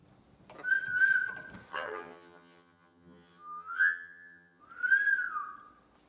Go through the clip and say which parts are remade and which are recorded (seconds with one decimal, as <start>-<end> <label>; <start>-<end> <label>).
0.0-1.7 recorded; 1.7-4.6 remade; 4.6-6.1 recorded